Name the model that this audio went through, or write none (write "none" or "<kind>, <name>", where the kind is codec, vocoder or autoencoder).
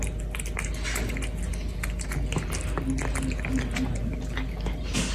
none